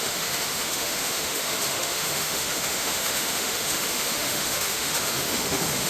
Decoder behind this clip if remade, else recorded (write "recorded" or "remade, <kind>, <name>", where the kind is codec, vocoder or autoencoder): remade, autoencoder, DAC-VAE